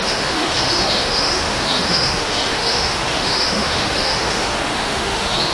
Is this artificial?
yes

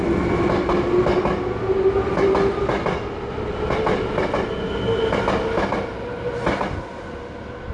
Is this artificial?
no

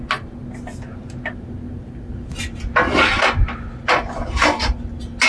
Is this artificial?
no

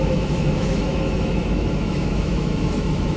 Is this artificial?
yes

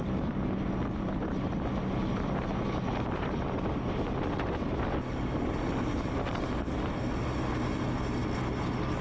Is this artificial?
no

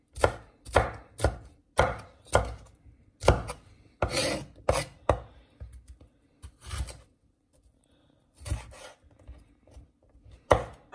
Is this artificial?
no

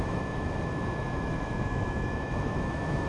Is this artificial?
yes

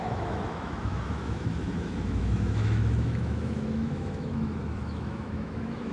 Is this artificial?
yes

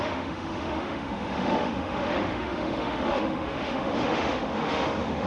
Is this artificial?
yes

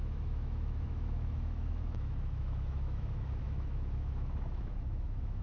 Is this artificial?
yes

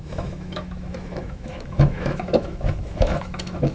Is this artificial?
yes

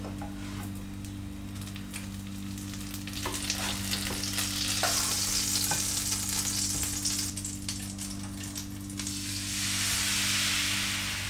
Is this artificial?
no